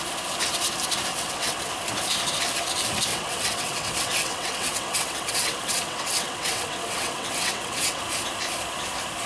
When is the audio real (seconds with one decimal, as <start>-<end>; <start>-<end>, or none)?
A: 0.0-1.1; 1.7-3.1; 8.0-9.3